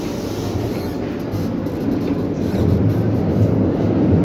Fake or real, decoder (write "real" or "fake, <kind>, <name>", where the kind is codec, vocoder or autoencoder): real